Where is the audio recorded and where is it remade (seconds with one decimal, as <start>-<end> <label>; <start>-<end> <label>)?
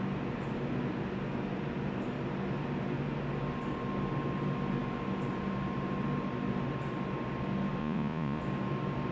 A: 0.0-7.8 recorded; 7.8-8.4 remade; 8.4-9.1 recorded